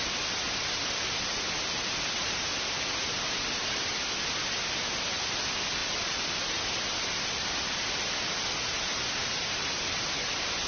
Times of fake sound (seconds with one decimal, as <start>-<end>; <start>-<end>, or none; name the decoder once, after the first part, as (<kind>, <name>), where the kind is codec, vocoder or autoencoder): 5.8-8.0 (vocoder, BigVGAN v2); 9.2-9.8